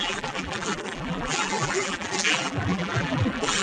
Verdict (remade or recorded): remade